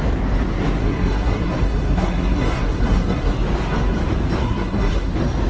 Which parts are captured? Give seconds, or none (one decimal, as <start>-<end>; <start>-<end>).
0.0-0.8; 3.3-4.4; 5.1-5.5